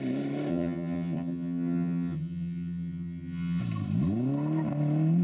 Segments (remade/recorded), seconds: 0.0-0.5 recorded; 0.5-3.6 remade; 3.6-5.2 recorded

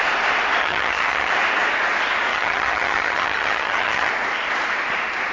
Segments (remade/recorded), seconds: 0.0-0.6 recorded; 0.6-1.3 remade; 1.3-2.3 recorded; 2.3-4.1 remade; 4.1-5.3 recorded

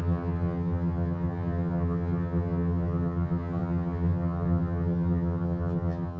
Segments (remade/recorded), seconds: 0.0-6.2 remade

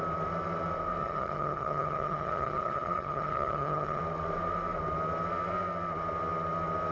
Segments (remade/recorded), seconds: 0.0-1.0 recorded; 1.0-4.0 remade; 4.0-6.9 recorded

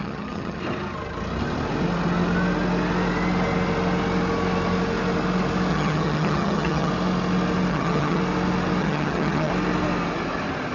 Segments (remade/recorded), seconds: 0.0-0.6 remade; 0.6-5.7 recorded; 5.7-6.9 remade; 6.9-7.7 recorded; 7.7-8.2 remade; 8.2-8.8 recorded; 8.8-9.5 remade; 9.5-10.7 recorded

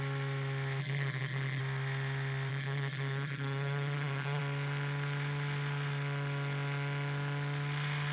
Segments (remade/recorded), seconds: 0.0-0.8 recorded; 0.8-1.6 remade; 1.6-2.5 recorded; 2.5-4.4 remade; 4.4-8.1 recorded

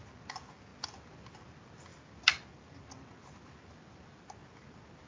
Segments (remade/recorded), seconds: 0.0-5.1 recorded